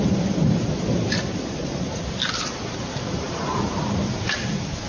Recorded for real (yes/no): no